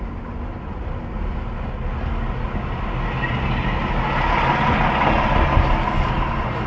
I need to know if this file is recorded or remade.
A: recorded